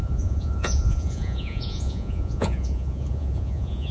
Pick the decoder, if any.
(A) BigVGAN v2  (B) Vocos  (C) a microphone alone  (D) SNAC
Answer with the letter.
B